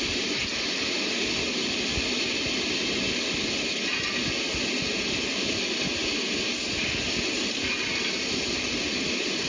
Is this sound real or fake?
real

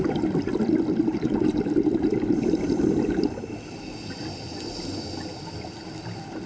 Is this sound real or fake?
real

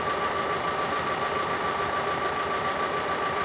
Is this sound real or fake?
real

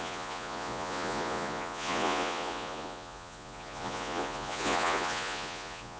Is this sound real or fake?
fake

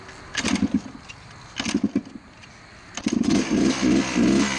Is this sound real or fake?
real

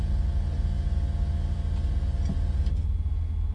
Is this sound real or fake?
real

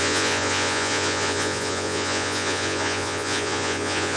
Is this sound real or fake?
fake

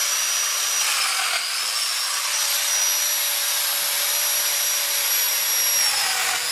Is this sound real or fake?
real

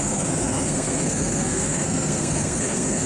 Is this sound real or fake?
fake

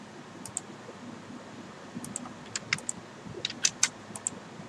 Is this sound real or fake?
real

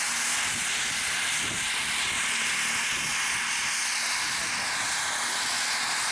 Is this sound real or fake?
real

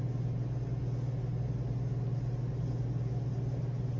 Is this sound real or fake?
real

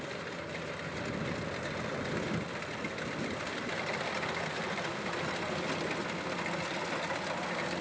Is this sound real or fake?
real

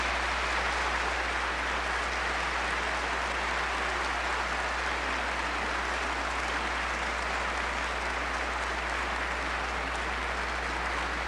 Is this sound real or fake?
real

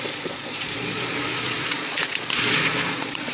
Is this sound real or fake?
fake